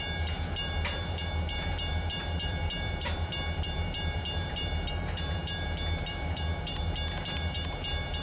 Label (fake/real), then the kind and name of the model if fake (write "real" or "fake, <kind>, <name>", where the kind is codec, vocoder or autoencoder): fake, vocoder, BigVGAN v2